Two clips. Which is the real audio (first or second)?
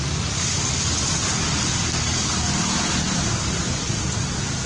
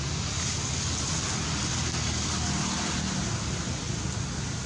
second